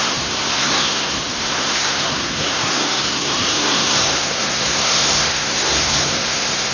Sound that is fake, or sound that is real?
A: fake